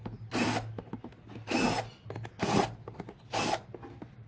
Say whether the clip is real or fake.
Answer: real